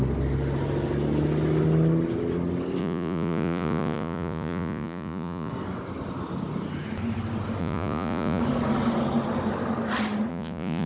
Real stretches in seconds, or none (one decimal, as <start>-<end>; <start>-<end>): 0.0-2.8; 5.5-7.6; 8.4-10.3